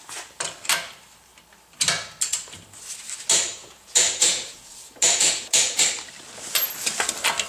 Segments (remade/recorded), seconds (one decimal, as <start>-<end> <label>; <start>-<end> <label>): 0.0-3.6 recorded; 3.6-5.8 remade; 5.8-7.5 recorded